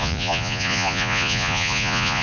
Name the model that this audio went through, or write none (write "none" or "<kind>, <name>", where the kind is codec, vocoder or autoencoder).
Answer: vocoder, Vocos